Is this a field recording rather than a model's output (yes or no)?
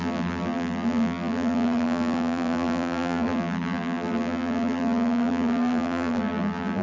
no